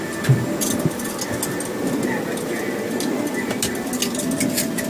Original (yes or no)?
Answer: yes